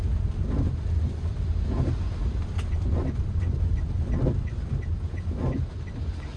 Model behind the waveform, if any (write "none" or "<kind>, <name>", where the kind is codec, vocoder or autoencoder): none